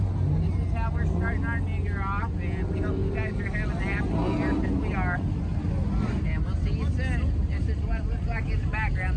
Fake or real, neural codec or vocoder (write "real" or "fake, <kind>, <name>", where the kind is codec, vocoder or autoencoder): real